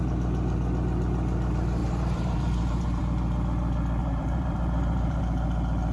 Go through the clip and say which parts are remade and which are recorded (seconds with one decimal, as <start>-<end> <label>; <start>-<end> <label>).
0.0-1.8 recorded; 1.8-3.0 remade; 3.0-4.0 recorded; 4.0-5.2 remade; 5.2-5.9 recorded